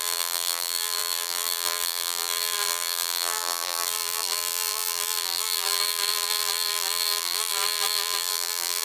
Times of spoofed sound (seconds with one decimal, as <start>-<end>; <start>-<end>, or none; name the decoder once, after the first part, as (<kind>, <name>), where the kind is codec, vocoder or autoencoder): 0.0-8.8 (vocoder, BigVGAN v2)